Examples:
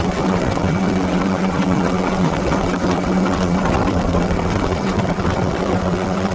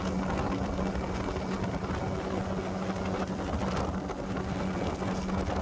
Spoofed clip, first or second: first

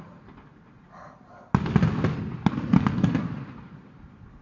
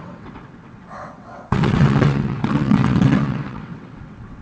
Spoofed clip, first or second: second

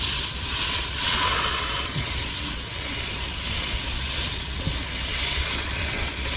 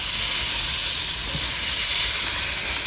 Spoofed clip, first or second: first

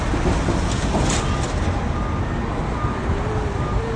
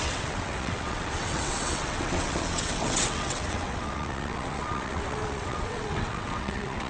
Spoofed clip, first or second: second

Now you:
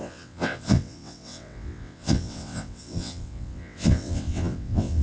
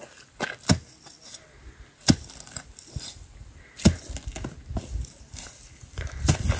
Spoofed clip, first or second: first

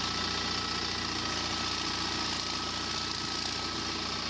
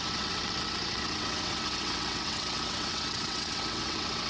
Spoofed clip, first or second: second